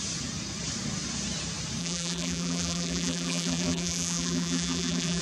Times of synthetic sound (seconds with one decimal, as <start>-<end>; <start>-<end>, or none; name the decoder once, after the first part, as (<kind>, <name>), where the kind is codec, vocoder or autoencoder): 1.8-5.2 (vocoder, BigVGAN v2)